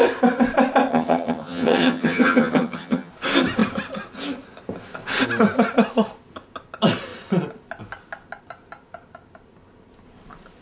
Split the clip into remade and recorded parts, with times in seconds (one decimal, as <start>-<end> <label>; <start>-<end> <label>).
0.0-0.9 recorded; 0.9-3.1 remade; 3.1-10.6 recorded